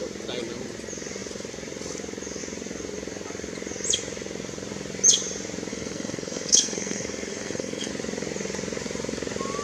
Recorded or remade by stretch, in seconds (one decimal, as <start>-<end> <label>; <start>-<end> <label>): 0.0-5.7 recorded; 5.7-7.9 remade; 7.9-9.6 recorded